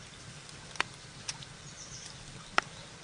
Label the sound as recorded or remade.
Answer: remade